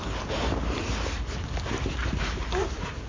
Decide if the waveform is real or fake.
real